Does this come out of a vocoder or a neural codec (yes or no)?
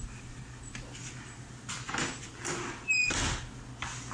no